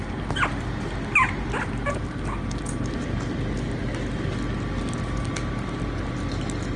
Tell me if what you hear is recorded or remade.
recorded